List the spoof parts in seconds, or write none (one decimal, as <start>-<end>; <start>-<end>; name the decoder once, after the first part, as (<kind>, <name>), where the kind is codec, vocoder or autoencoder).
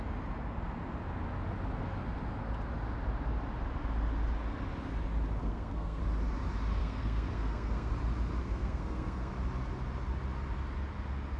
5.4-6.0 (codec, SNAC); 6.8-7.9; 8.4-9.3